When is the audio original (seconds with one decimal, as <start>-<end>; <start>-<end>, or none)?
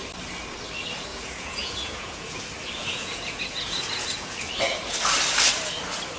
0.0-1.1; 2.4-2.8; 4.5-6.2